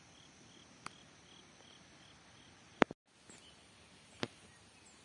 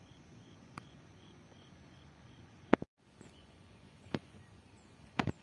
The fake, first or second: second